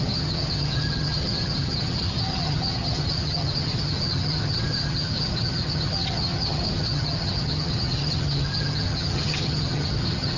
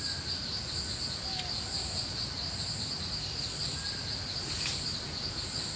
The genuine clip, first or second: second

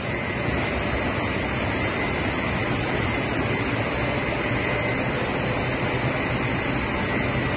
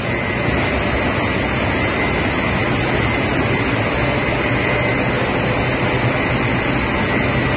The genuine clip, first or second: second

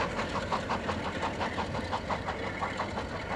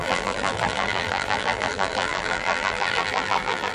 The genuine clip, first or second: first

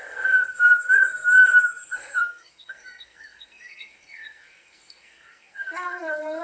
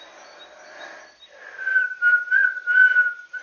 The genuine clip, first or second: second